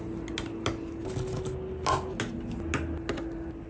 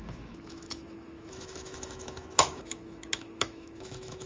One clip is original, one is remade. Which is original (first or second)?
first